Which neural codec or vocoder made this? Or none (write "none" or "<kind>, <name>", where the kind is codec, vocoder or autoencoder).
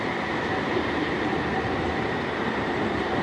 vocoder, BigVGAN v2